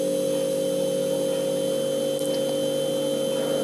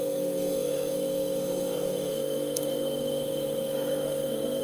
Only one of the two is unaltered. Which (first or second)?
first